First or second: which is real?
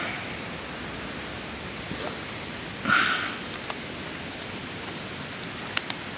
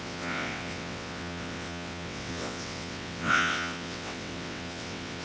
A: first